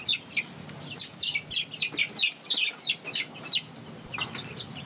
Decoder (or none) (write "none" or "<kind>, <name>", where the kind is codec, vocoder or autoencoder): none